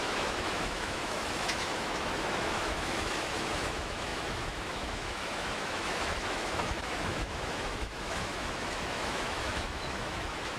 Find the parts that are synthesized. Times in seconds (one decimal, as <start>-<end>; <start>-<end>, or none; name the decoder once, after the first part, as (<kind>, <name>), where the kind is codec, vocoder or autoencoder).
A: 0.0-10.6 (autoencoder, DAC-VAE)